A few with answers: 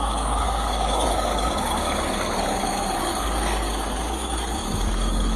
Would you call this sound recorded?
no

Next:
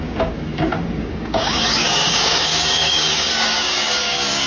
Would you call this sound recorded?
no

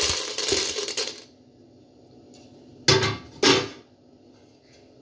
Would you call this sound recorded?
yes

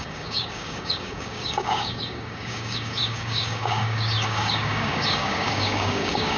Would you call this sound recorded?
no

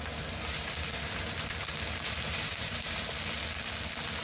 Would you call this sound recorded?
yes